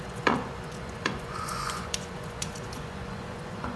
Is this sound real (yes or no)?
no